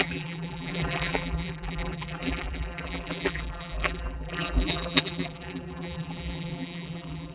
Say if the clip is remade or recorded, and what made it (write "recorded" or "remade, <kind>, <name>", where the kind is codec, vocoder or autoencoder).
remade, vocoder, BigVGAN v2